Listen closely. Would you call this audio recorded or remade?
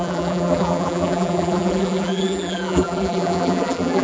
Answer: remade